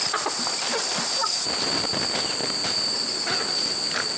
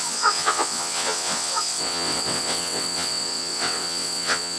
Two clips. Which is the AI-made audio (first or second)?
second